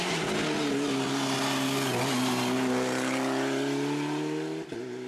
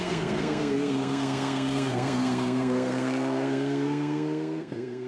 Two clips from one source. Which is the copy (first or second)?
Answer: second